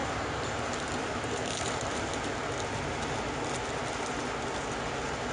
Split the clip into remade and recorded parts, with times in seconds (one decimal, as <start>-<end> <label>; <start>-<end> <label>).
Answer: 0.0-2.1 remade; 2.1-5.3 recorded